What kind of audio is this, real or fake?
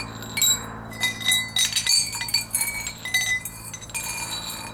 real